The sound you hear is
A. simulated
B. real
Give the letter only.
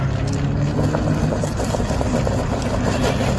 B